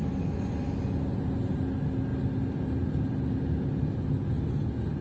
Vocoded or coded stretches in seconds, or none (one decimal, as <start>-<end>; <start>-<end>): none